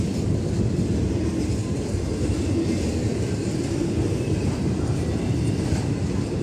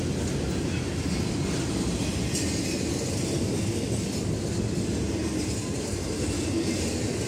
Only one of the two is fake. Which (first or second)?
first